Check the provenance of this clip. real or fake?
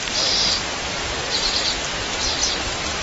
fake